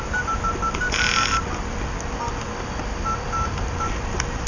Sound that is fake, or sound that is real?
real